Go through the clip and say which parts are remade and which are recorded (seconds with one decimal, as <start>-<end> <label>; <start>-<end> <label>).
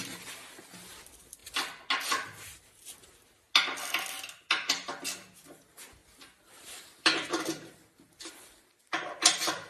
0.0-1.4 remade; 1.4-4.5 recorded; 4.5-9.7 remade